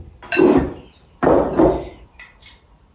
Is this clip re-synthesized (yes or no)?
yes